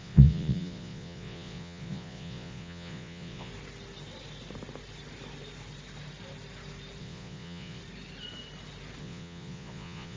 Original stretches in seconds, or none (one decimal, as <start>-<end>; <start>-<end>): 3.5-7.0; 7.8-9.0

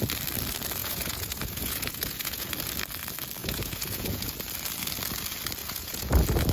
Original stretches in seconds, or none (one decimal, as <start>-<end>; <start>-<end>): 0.0-0.8; 2.5-3.4; 4.3-5.6; 6.1-6.5

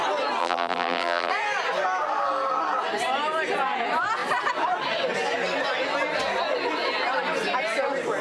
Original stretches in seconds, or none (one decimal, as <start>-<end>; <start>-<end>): 0.0-0.4; 1.3-8.2